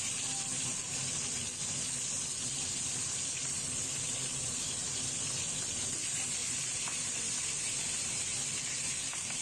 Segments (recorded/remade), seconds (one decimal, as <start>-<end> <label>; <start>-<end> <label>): 0.0-9.4 recorded